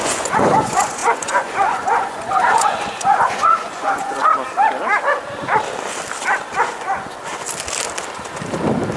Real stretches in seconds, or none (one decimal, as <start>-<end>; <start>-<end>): 4.3-6.6; 7.3-9.0